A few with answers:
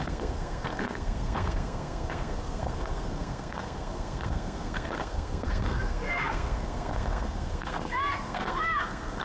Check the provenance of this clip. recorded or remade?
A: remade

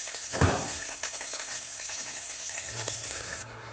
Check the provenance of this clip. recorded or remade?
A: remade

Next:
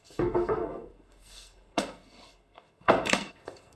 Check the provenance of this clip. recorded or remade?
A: remade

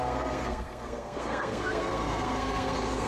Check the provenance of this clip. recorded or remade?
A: remade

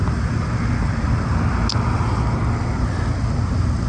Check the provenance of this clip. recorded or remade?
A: recorded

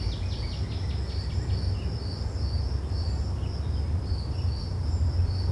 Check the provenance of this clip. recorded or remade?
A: recorded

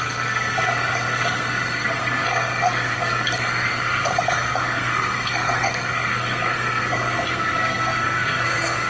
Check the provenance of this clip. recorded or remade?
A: remade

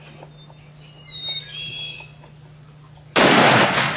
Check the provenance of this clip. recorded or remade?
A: recorded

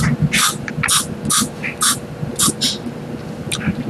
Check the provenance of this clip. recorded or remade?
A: recorded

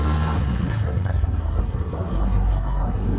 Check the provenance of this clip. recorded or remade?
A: remade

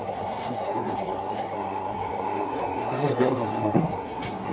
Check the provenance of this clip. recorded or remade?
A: remade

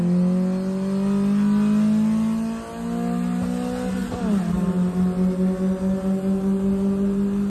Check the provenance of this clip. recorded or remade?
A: recorded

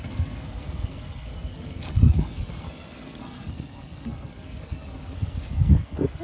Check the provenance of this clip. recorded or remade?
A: remade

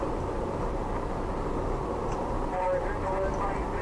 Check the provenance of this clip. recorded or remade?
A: recorded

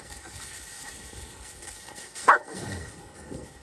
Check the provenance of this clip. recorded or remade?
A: remade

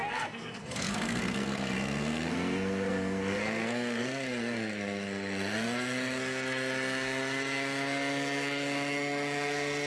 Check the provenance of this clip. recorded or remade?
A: remade